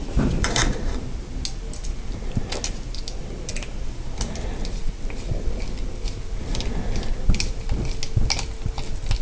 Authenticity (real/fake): real